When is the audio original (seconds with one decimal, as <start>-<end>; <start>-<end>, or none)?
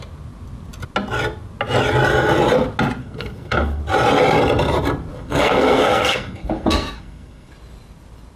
0.0-3.0; 3.8-5.1; 7.5-8.4